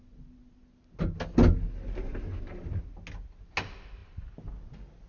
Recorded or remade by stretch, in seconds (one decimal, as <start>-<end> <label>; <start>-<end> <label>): 0.0-5.1 recorded